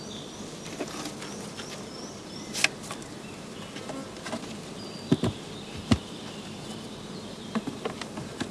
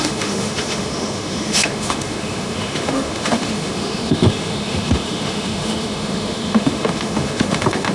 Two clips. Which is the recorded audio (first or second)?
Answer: first